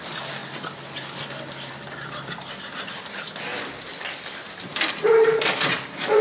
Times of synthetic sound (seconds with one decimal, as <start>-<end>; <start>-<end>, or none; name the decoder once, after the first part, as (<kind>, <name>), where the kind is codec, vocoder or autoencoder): 0.0-3.5 (vocoder, BigVGAN v2); 4.3-6.2